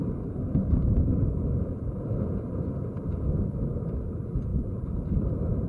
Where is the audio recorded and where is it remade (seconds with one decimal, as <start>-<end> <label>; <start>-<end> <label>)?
0.0-4.5 recorded; 4.5-5.7 remade